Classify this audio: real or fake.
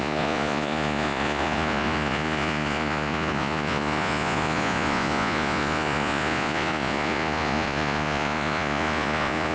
fake